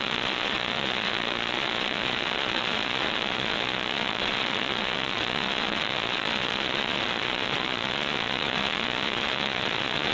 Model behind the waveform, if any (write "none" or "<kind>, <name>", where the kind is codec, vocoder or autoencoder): vocoder, Vocos